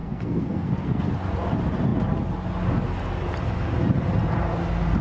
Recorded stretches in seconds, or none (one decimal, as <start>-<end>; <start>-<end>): 1.1-5.0